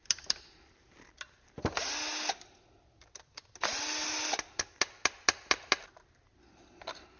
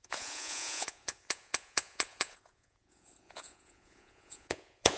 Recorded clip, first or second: first